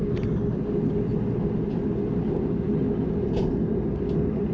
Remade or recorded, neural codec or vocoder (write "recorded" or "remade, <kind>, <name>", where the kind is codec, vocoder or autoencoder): recorded